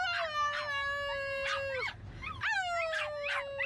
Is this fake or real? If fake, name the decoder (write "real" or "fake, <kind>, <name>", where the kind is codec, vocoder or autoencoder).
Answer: real